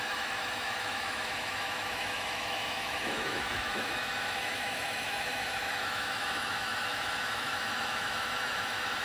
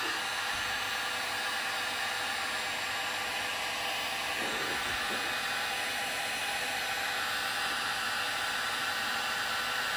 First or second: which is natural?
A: second